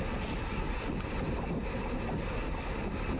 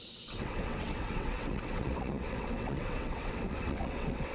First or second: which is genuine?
first